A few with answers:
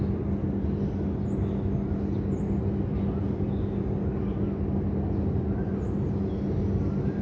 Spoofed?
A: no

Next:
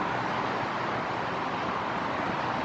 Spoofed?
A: no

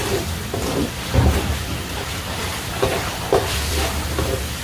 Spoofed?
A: yes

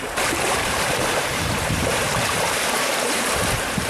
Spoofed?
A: yes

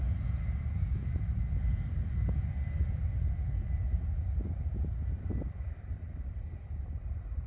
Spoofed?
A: no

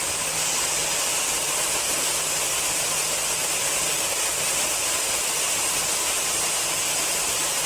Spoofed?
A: no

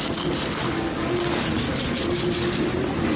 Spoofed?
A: no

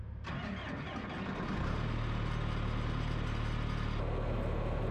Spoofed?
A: no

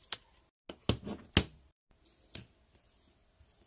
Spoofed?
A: no